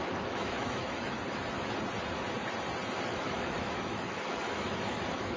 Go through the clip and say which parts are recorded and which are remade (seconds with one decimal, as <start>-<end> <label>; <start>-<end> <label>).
0.0-1.2 remade; 1.2-3.1 recorded; 3.1-5.4 remade